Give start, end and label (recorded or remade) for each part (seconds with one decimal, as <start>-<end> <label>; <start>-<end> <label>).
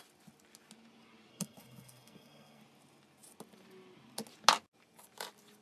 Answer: 0.0-1.3 recorded; 1.3-2.6 remade; 2.6-5.6 recorded